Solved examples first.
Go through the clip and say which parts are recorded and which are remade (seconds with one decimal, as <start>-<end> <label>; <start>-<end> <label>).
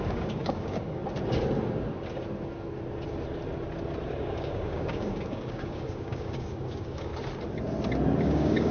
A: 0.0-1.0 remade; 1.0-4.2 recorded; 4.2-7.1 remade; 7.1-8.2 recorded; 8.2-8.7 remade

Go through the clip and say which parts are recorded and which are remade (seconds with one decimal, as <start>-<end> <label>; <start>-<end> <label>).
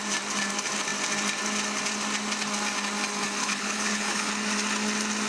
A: 0.0-3.4 recorded; 3.4-4.3 remade; 4.3-5.3 recorded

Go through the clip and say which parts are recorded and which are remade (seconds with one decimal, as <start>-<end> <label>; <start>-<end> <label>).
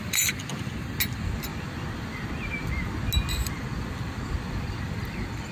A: 0.0-5.5 recorded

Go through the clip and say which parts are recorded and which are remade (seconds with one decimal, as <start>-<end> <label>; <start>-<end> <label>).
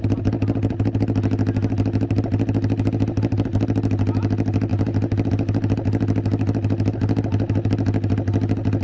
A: 0.0-8.8 recorded